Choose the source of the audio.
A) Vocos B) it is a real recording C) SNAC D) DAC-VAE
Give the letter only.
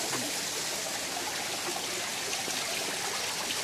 B